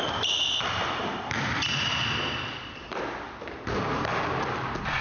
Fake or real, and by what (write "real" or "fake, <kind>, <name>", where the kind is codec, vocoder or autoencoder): real